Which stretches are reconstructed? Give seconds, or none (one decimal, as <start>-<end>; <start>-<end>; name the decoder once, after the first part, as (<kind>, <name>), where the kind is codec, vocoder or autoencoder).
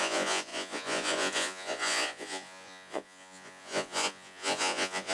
0.0-5.1 (vocoder, Vocos)